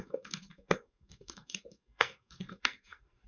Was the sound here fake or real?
fake